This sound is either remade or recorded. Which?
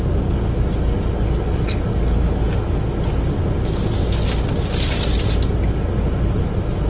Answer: recorded